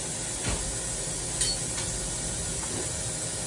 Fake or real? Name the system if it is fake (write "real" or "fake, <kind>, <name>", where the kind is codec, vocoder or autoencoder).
real